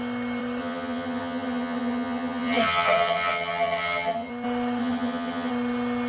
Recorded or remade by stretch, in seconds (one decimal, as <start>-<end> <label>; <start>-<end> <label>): 0.0-0.6 recorded; 0.6-4.3 remade; 4.3-4.8 recorded; 4.8-5.5 remade; 5.5-6.1 recorded